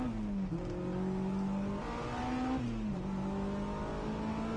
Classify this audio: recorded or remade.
recorded